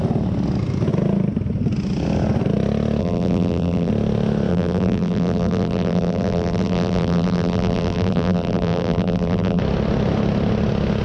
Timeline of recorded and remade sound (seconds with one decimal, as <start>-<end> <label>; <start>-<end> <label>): 0.0-3.0 recorded; 3.0-3.9 remade; 3.9-4.5 recorded; 4.5-9.6 remade; 9.6-11.0 recorded